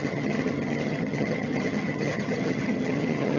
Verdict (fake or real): fake